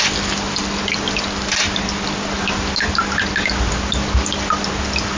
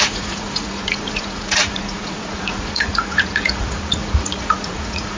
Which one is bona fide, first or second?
first